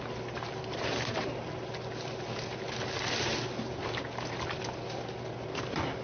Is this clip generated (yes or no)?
no